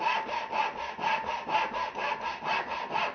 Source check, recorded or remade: recorded